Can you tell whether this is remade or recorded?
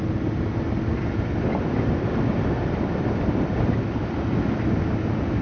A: recorded